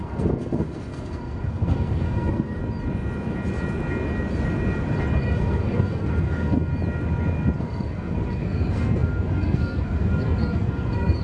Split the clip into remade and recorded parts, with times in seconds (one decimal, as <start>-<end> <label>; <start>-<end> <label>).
0.0-2.6 remade; 2.6-5.2 recorded; 5.2-6.7 remade; 6.7-7.6 recorded; 7.6-11.2 remade